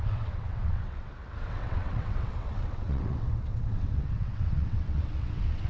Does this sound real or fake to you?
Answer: fake